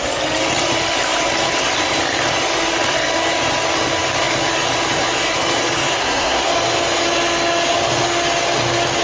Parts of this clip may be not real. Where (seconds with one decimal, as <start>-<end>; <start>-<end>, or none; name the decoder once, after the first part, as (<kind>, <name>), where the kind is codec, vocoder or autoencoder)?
5.9-6.5 (codec, SNAC)